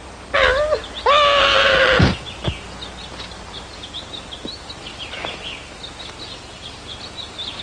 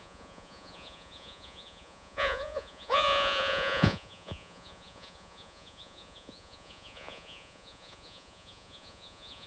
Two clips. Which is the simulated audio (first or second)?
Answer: second